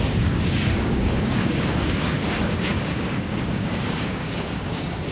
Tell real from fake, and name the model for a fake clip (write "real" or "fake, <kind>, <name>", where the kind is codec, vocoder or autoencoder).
fake, codec, DAC